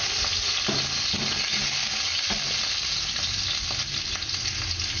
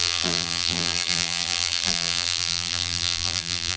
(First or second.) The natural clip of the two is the first